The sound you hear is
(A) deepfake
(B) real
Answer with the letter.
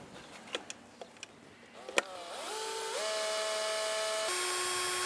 B